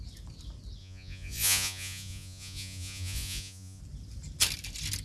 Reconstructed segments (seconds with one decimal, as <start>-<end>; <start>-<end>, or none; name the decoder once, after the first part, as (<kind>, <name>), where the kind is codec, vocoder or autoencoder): 0.8-3.8 (vocoder, Vocos)